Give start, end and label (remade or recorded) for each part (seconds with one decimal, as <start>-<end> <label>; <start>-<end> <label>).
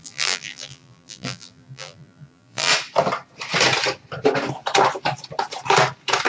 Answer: 0.0-2.7 remade; 2.7-6.3 recorded